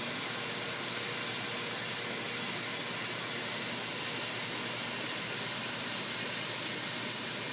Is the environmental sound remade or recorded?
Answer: recorded